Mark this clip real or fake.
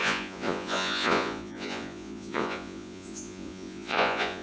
fake